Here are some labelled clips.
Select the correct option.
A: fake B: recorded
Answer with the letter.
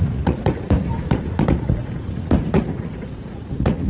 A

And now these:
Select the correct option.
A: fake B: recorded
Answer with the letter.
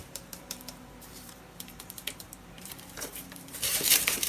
A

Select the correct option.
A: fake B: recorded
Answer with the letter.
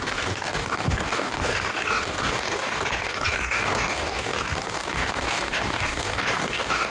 A